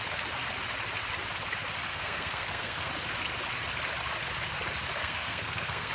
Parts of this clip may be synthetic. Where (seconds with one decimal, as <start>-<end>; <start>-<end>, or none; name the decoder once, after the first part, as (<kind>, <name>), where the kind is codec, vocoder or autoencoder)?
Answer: 1.9-2.9 (codec, SNAC); 5.0-5.9